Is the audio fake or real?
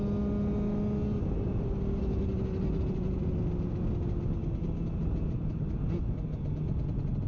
real